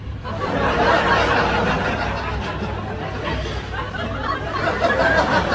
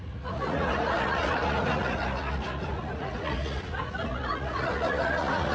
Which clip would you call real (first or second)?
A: first